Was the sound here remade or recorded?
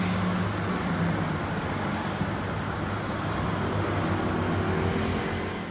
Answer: recorded